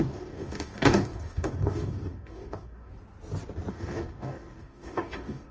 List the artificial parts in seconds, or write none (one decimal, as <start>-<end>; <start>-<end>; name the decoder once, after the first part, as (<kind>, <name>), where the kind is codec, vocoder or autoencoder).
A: 0.0-2.9 (codec, DAC); 3.7-5.5